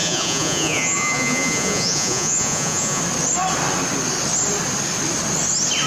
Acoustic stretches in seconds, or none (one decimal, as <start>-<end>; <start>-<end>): 3.0-5.9